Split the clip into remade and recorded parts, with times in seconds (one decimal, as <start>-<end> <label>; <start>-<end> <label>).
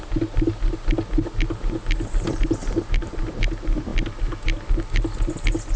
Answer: 0.0-2.6 recorded; 2.6-3.2 remade; 3.2-5.8 recorded